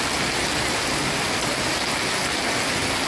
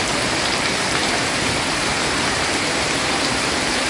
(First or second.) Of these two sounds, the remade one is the second